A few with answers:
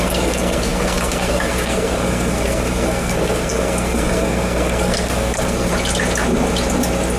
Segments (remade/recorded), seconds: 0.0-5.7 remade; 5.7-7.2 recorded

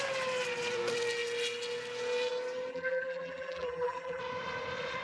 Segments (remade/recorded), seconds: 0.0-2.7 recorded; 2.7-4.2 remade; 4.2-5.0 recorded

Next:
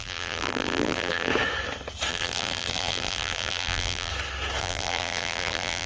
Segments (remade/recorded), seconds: 0.0-1.3 remade; 1.3-2.1 recorded; 2.1-4.1 remade; 4.1-4.6 recorded; 4.6-5.9 remade